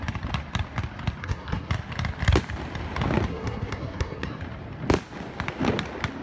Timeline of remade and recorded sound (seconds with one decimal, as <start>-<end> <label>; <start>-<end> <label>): 0.0-1.2 recorded; 1.2-1.7 remade; 1.7-3.3 recorded; 3.3-4.4 remade; 4.4-6.2 recorded

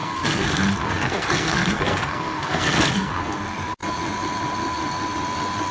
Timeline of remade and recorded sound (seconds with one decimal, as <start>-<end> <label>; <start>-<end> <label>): 0.0-3.4 remade; 3.4-5.7 recorded

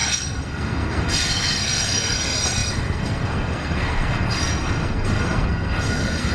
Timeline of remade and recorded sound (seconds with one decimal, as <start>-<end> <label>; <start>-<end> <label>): 0.0-6.3 remade